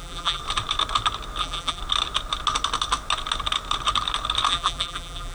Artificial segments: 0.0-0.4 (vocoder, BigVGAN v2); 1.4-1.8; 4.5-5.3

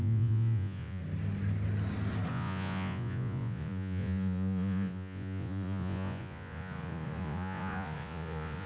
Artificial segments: 0.0-1.0 (vocoder, Vocos); 2.3-8.7

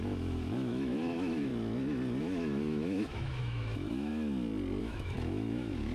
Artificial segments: 0.0-1.5 (autoencoder, DAC-VAE); 2.2-4.1; 4.8-5.9